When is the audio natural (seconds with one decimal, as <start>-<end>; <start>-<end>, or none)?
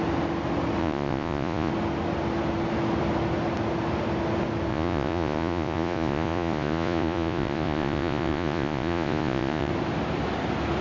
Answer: 0.0-0.8; 1.7-4.7; 9.7-10.8